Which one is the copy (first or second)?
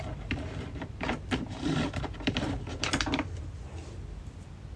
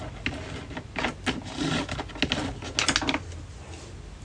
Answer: first